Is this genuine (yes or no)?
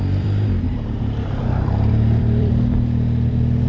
no